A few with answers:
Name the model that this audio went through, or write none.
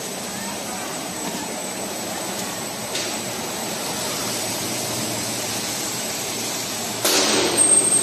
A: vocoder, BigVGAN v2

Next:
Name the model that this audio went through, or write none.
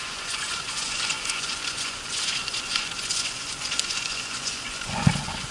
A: vocoder, Vocos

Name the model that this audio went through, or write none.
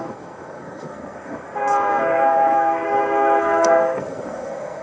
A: codec, SNAC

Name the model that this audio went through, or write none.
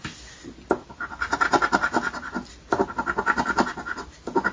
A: none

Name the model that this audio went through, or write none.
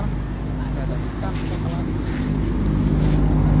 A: none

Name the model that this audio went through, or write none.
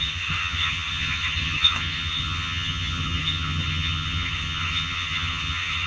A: vocoder, HiFi-GAN